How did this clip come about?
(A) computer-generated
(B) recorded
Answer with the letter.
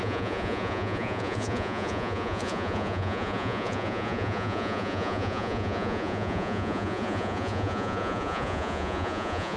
A